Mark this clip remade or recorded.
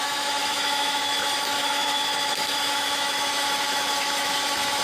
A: remade